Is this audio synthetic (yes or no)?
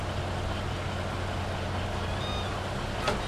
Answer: no